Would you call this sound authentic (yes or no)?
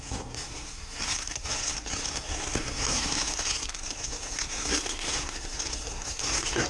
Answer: no